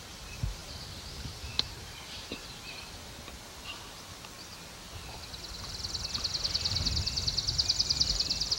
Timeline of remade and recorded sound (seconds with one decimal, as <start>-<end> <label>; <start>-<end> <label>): 0.0-3.0 remade; 3.0-8.1 recorded; 8.1-8.6 remade